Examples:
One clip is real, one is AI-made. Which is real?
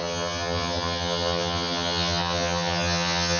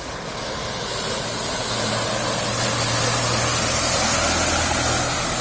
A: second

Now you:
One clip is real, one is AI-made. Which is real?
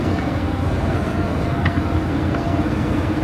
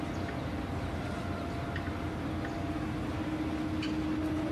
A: second